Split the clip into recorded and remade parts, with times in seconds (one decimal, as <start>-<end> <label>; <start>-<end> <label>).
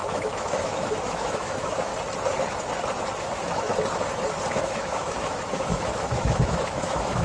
0.0-1.9 remade; 1.9-3.2 recorded; 3.2-3.7 remade; 3.7-4.5 recorded; 4.5-7.2 remade